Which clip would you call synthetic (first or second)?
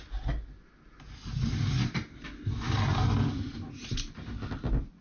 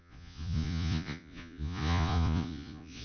second